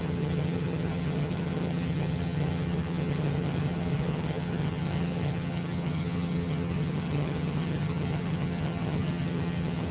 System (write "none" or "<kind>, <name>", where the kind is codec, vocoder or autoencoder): vocoder, HiFi-GAN